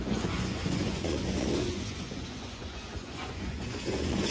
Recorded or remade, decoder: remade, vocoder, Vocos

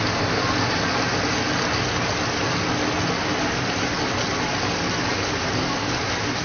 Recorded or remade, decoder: recorded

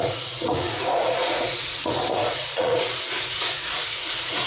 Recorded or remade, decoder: remade, vocoder, Vocos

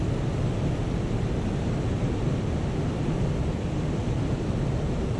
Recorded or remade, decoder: recorded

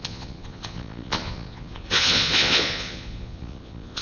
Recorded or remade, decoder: remade, vocoder, Vocos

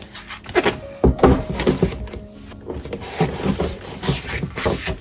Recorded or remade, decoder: recorded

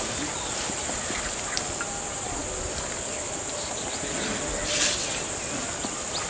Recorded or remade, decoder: recorded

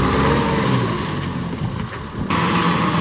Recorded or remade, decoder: recorded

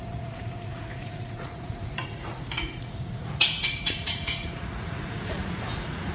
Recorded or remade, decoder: remade, vocoder, Vocos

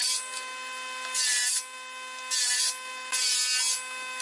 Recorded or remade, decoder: recorded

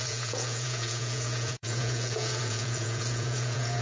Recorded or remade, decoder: remade, vocoder, Vocos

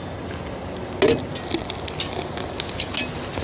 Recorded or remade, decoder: recorded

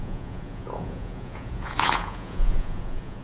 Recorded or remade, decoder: remade, vocoder, Vocos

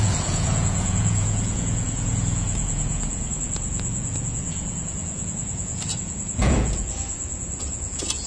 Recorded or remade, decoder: remade, vocoder, Vocos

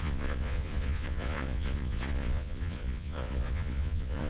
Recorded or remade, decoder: remade, vocoder, Vocos